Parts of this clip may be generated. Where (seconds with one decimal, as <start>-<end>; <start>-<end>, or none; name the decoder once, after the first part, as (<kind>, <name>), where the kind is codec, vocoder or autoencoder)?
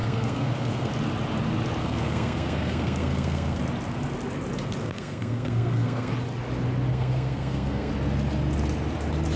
0.0-0.9 (codec, SNAC); 1.8-3.6; 4.8-6.1; 6.9-7.9